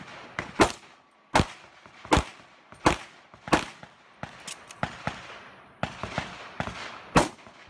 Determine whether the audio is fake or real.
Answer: real